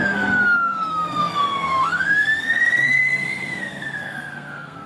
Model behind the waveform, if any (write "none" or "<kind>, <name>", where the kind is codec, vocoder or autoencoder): codec, SNAC